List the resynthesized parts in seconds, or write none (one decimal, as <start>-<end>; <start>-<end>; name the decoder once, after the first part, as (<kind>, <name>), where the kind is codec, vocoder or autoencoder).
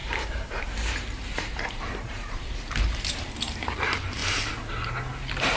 0.0-4.2 (vocoder, BigVGAN v2)